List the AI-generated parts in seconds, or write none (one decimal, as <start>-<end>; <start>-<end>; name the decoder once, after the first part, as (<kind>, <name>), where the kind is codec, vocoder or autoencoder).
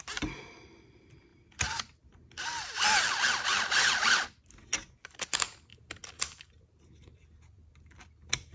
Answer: none